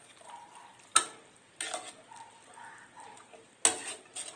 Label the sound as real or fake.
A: real